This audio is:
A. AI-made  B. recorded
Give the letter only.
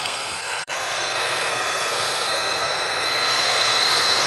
A